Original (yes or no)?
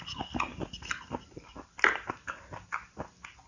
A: yes